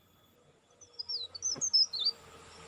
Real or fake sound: real